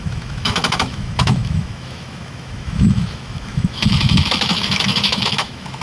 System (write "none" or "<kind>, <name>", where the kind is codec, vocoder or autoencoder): autoencoder, DAC-VAE